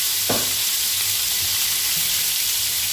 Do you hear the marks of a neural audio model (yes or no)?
no